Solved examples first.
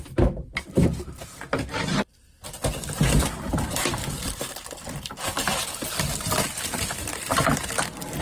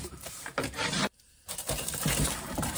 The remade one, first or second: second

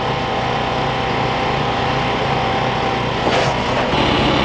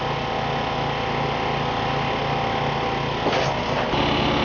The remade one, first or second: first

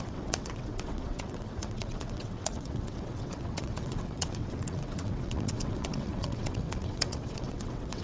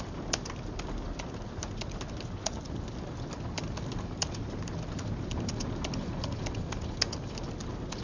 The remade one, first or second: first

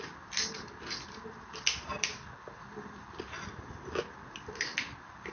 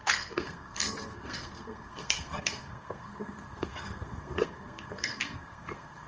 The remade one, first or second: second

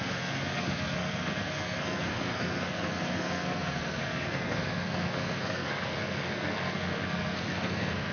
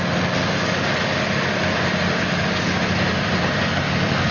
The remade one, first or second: first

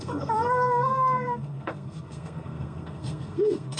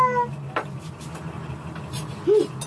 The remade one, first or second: first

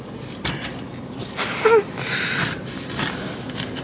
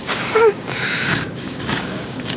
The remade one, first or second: second